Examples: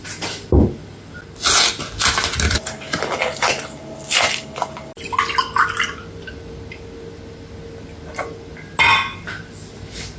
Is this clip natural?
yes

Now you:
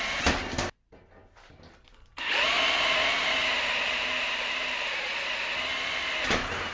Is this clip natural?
yes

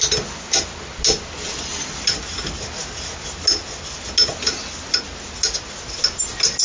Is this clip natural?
yes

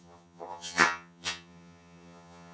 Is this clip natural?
no